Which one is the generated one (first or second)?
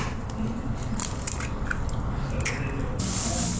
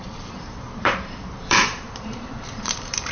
second